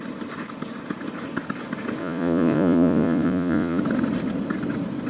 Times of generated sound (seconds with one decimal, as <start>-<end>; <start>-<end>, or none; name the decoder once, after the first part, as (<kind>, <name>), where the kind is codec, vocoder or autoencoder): 2.0-3.8 (vocoder, Vocos)